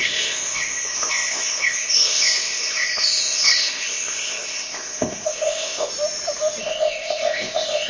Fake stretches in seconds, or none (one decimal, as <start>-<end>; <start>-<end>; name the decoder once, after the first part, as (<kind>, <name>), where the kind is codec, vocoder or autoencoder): 0.0-5.9 (codec, ZipCodec); 6.6-7.9